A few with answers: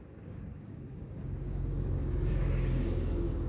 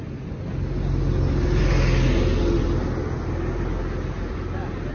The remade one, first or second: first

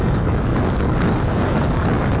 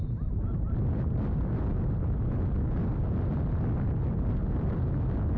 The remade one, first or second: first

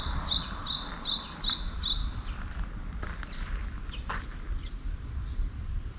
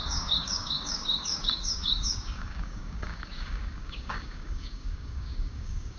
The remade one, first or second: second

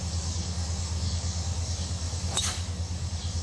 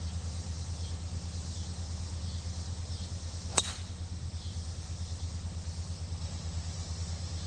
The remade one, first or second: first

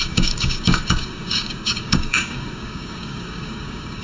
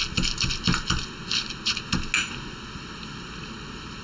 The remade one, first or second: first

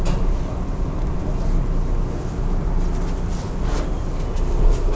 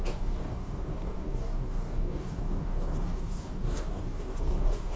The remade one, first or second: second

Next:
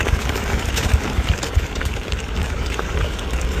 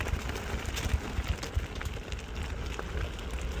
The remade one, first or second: first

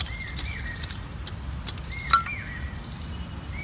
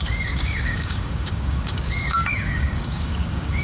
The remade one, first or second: second